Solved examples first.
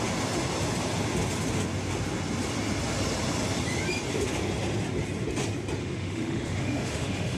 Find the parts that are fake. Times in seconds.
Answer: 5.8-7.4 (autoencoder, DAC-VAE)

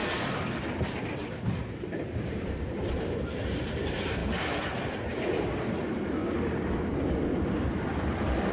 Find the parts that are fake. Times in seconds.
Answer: 1.0-4.2 (vocoder, BigVGAN v2); 4.9-6.2

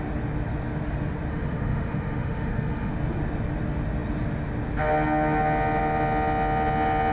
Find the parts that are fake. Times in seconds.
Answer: 1.3-2.9 (autoencoder, DAC-VAE)

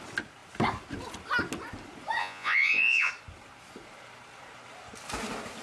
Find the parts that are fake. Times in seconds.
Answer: 2.2-3.1 (vocoder, Vocos)

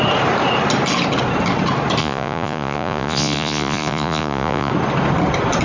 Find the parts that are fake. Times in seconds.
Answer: 2.0-4.7 (vocoder, Vocos)

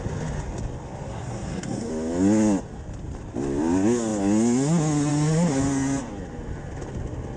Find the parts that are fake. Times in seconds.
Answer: 1.1-1.9 (codec, SNAC)